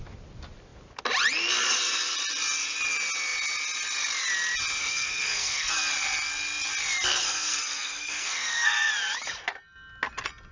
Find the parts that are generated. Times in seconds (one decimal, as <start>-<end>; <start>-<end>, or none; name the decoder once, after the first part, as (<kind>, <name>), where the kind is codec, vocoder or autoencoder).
4.8-5.7 (codec, SNAC); 7.2-8.9